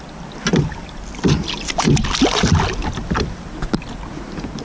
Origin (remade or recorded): recorded